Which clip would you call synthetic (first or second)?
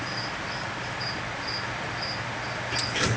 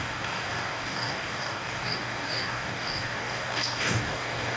second